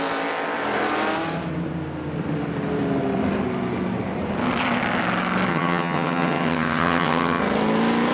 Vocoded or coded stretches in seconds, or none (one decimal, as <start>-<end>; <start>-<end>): 5.5-7.4